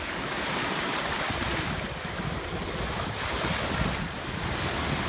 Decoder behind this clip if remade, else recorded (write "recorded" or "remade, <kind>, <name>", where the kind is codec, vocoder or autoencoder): recorded